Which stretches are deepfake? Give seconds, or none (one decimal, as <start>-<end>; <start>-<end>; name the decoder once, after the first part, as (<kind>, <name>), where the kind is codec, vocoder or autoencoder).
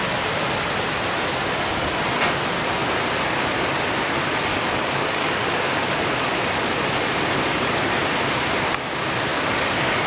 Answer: 4.5-6.0 (codec, DAC); 9.3-10.1